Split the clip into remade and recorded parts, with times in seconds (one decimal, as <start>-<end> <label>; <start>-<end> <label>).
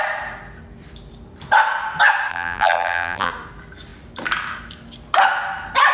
0.0-2.3 recorded; 2.3-3.3 remade; 3.3-5.9 recorded